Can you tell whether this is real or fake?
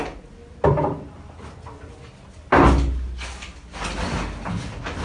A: real